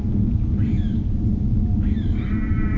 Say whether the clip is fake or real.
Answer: real